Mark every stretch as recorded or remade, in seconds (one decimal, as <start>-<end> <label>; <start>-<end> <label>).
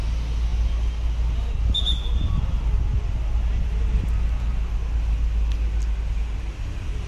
0.0-7.1 recorded